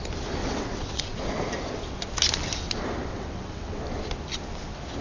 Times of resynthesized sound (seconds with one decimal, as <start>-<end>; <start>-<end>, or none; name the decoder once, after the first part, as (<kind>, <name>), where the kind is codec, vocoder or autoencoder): 0.4-1.0 (vocoder, WaveNeXt); 3.1-3.8

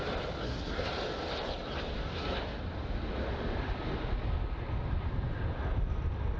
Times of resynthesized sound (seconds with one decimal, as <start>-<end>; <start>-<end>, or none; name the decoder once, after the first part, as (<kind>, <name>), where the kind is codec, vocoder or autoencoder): 0.4-0.9 (codec, SNAC)